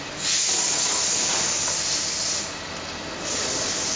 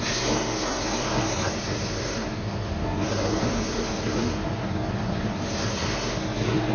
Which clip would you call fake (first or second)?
second